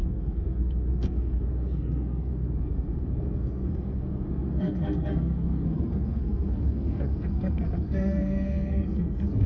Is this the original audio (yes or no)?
no